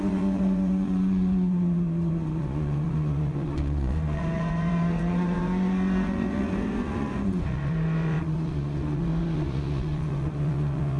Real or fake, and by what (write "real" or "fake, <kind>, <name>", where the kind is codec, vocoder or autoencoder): fake, vocoder, Vocos